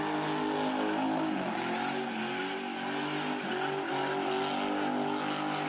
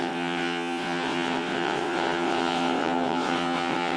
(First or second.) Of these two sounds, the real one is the first